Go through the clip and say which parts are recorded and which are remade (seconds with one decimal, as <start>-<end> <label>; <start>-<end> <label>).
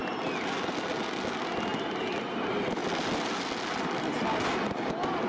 0.0-5.3 recorded